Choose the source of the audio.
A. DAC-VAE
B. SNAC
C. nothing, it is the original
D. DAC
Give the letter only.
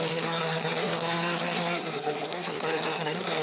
B